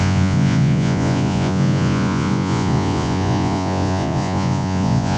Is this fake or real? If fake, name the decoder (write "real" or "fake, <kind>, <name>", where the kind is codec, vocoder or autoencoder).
fake, vocoder, Vocos